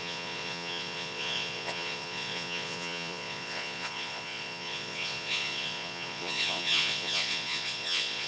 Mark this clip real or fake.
fake